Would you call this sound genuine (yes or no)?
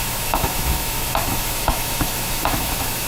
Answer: no